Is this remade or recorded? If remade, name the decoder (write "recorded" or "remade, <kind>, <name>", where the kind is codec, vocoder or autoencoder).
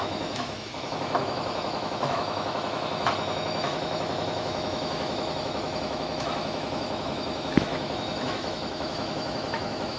remade, autoencoder, DAC-VAE